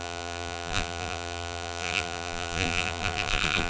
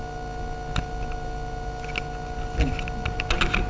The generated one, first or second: first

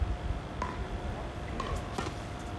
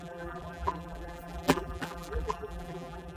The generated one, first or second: second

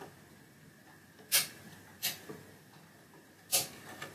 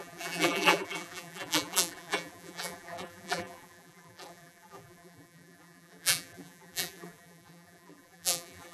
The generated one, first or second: second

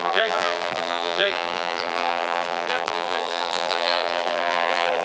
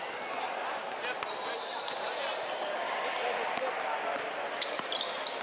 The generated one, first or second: first